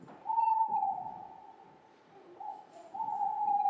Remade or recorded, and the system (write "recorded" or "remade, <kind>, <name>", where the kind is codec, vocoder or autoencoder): remade, vocoder, Vocos